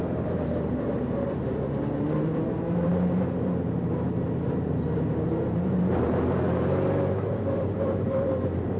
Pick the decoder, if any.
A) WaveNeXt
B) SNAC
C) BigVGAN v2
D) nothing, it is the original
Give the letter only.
C